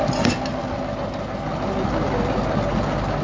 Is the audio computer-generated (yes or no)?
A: no